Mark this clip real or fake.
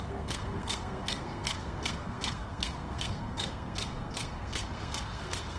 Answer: fake